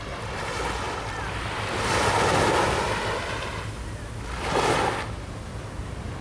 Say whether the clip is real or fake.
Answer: real